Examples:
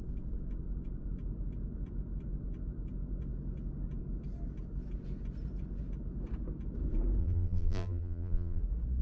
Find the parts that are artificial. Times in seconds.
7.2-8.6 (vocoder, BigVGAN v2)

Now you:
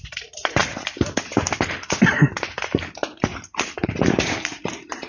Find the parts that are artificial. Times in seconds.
0.0-0.6 (vocoder, BigVGAN v2); 3.7-5.1

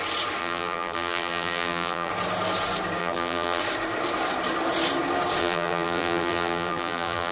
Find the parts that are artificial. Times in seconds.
0.4-2.1 (vocoder, BigVGAN v2); 3.0-3.6; 5.4-7.3

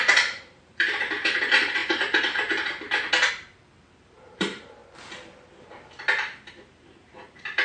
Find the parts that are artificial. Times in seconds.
0.0-4.8 (vocoder, BigVGAN v2); 6.5-7.6

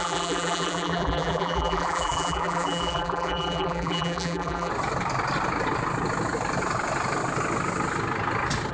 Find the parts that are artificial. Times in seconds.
0.0-4.7 (vocoder, BigVGAN v2)

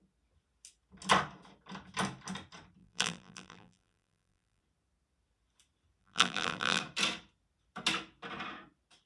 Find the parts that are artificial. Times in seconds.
2.8-4.6 (vocoder, BigVGAN v2); 6.0-6.8

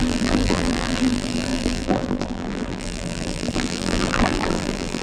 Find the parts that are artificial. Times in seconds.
0.0-5.0 (vocoder, BigVGAN v2)